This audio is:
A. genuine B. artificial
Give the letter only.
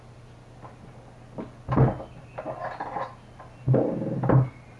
A